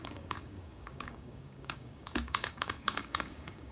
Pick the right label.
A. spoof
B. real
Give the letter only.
A